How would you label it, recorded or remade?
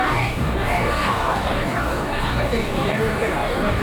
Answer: remade